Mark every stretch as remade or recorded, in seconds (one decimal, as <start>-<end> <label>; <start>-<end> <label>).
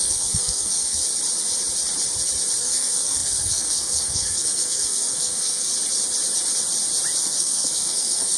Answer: 0.0-1.0 remade; 1.0-2.6 recorded; 2.6-5.7 remade; 5.7-7.2 recorded; 7.2-8.4 remade